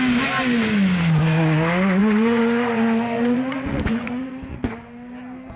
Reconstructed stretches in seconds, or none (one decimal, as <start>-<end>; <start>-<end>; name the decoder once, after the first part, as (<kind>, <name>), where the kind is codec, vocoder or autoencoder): 2.0-4.7 (vocoder, Vocos)